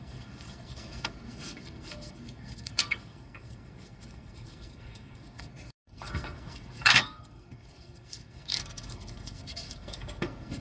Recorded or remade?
remade